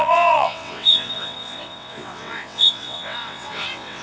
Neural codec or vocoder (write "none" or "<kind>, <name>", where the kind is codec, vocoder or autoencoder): vocoder, WaveNeXt